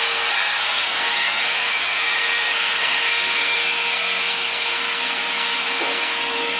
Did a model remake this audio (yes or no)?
yes